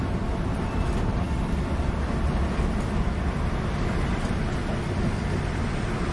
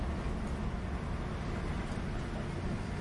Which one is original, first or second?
second